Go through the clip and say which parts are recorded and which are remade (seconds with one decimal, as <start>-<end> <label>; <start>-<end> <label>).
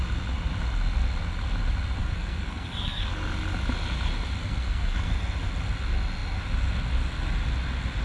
0.0-2.0 recorded; 2.0-3.1 remade; 3.1-4.4 recorded; 4.4-5.1 remade; 5.1-8.0 recorded